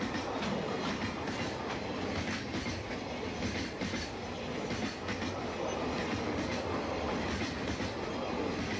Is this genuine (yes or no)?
yes